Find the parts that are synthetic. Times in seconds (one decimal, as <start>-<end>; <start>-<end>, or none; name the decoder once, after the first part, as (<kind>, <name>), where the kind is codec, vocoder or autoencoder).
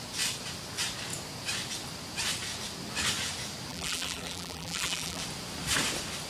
3.7-5.2 (vocoder, BigVGAN v2)